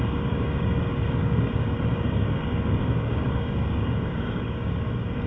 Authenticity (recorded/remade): remade